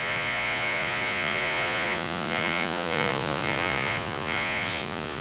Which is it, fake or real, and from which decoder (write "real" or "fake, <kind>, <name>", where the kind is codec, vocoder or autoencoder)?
fake, vocoder, Vocos